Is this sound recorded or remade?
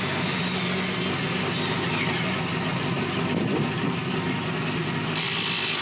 recorded